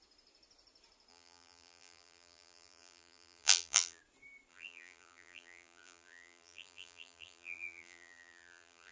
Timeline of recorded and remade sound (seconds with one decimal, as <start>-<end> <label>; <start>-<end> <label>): 0.0-1.1 recorded; 1.1-4.0 remade; 4.0-4.5 recorded; 4.5-8.9 remade